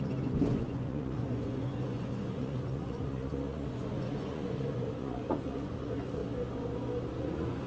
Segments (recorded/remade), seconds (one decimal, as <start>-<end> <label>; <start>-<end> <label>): 0.0-6.2 remade; 6.2-7.2 recorded; 7.2-7.7 remade